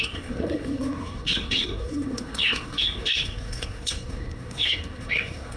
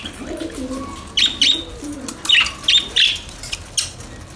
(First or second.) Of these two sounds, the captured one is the second